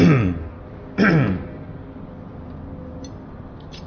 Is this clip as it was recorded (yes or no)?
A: yes